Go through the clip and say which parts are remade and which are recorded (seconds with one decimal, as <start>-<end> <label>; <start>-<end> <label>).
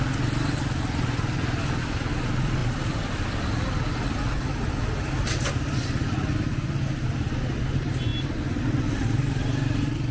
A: 0.0-2.6 recorded; 2.6-5.5 remade; 5.5-10.1 recorded